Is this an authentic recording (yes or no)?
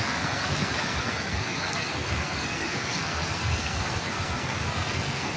no